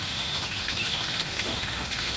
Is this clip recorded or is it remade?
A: remade